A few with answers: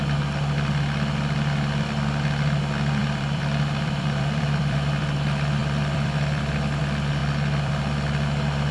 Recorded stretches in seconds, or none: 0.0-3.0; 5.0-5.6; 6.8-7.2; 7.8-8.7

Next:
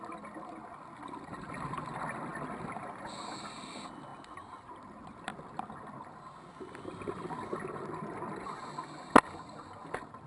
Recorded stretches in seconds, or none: 0.0-10.3